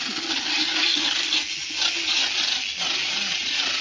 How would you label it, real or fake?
real